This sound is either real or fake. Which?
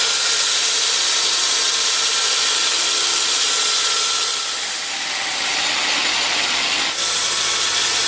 real